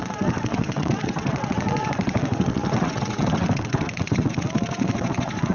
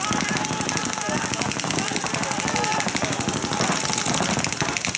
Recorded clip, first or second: second